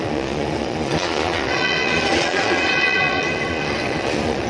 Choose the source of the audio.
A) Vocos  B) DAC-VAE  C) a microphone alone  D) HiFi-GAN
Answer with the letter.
A